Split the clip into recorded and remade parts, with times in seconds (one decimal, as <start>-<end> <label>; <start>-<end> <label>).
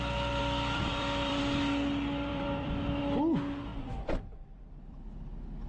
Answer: 0.0-0.4 recorded; 0.4-1.4 remade; 1.4-2.3 recorded; 2.3-3.0 remade; 3.0-3.7 recorded; 3.7-5.0 remade; 5.0-5.7 recorded